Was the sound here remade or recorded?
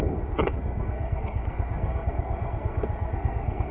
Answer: remade